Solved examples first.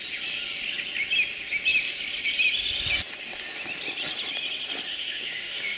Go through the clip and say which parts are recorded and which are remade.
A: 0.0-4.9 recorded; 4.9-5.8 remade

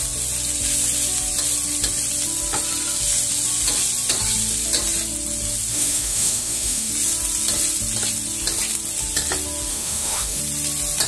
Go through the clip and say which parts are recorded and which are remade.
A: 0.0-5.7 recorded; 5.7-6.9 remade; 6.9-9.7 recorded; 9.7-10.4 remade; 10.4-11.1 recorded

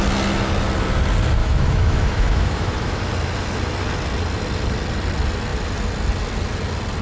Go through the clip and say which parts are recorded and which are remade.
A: 0.0-1.4 recorded; 1.4-3.0 remade; 3.0-7.0 recorded